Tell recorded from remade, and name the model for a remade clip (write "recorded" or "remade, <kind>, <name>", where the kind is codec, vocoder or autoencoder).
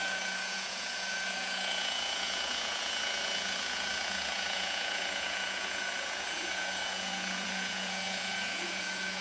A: remade, vocoder, Vocos